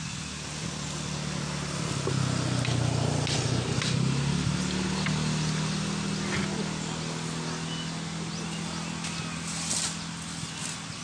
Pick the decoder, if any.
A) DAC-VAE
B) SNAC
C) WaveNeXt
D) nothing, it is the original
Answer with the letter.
D